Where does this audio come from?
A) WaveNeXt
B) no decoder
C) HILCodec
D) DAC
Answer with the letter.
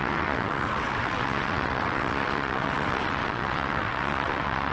A